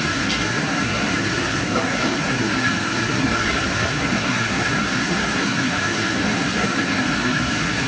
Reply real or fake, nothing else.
fake